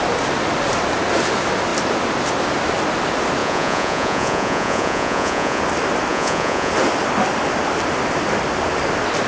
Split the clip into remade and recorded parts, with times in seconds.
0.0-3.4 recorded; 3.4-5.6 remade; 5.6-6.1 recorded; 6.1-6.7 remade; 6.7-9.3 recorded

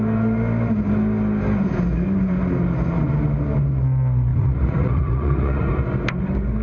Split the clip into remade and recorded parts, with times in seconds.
0.0-4.3 recorded; 4.3-5.7 remade; 5.7-6.6 recorded

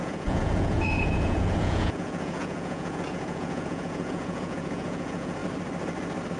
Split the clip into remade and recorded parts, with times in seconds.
0.0-5.4 remade; 5.4-6.4 recorded

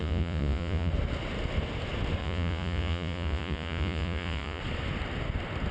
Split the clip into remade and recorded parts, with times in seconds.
0.0-0.9 remade; 0.9-2.2 recorded; 2.2-4.6 remade; 4.6-5.7 recorded

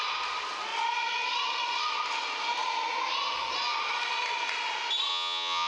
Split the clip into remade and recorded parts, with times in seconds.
0.0-5.1 recorded; 5.1-5.7 remade

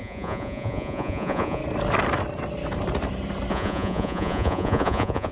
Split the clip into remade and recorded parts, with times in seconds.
0.0-1.6 remade; 1.6-3.5 recorded; 3.5-5.3 remade